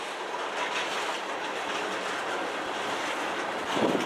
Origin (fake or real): real